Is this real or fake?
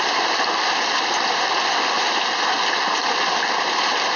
real